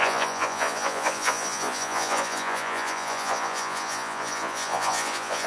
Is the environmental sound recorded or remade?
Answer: remade